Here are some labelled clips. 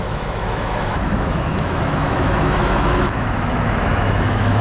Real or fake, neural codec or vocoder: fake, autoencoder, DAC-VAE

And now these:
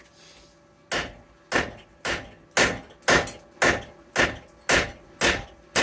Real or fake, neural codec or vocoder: real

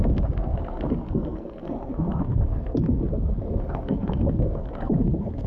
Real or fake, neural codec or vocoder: fake, codec, SNAC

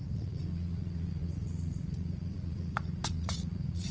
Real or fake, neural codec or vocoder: fake, vocoder, Vocos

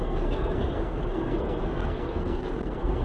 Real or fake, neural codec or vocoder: fake, codec, SNAC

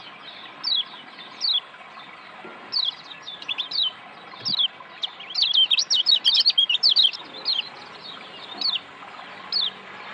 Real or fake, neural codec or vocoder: real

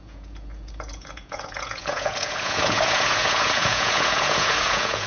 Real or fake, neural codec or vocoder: fake, vocoder, Vocos